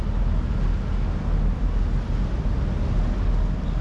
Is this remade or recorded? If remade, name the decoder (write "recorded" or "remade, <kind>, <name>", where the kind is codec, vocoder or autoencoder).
recorded